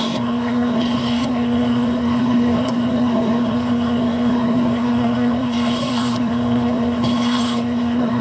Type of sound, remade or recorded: remade